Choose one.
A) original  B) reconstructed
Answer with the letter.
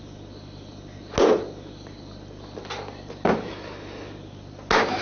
A